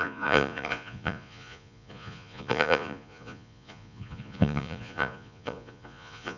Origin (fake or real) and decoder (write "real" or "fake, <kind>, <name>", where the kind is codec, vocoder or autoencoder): fake, vocoder, Vocos